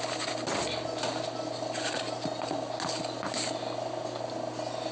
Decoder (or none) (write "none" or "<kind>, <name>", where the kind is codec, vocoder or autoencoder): none